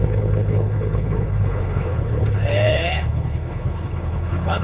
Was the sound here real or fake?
fake